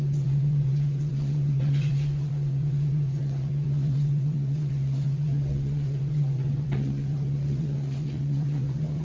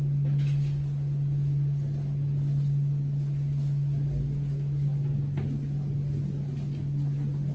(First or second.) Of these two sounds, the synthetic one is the first